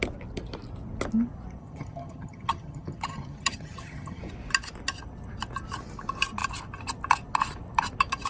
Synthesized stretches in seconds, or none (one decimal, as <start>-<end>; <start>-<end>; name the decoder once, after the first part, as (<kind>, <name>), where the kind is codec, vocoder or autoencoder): 1.6-4.2 (vocoder, HiFi-GAN)